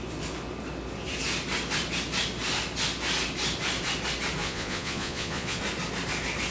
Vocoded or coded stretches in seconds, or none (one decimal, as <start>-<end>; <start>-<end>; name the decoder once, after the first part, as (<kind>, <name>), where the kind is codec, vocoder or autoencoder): 4.4-5.6 (vocoder, Vocos)